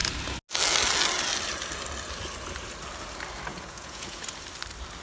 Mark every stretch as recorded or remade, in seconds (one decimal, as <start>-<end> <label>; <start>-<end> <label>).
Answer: 0.0-3.5 recorded; 3.5-4.2 remade; 4.2-5.0 recorded

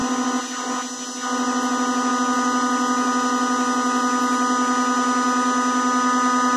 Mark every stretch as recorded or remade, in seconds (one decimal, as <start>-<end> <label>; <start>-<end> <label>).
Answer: 0.0-6.6 recorded